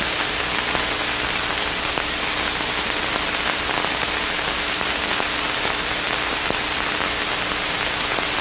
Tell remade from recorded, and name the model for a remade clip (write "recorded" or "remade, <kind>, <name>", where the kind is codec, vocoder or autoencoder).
recorded